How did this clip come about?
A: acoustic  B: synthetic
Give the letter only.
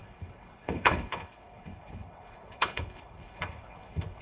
B